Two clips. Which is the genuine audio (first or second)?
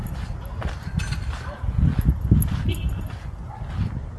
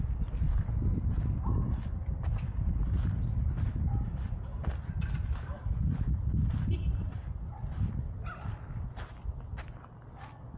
first